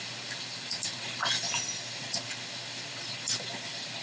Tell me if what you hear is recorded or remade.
recorded